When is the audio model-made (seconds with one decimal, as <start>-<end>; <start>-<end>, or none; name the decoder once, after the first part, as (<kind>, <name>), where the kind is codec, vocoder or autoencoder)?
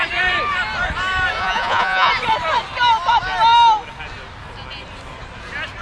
1.4-2.1 (vocoder, Vocos)